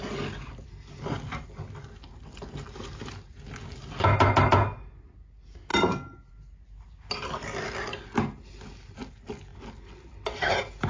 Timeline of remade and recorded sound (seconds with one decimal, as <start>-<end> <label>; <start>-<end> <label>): 0.0-10.9 recorded